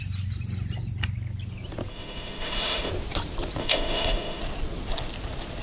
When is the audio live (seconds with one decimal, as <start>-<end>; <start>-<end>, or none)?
0.0-1.9; 2.9-3.6; 4.4-5.6